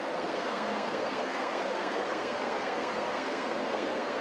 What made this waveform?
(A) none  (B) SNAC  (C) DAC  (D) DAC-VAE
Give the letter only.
B